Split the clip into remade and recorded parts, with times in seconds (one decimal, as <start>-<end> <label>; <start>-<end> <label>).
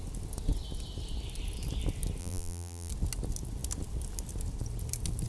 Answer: 0.0-2.2 recorded; 2.2-2.9 remade; 2.9-5.3 recorded